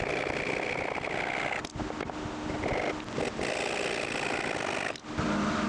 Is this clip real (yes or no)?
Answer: yes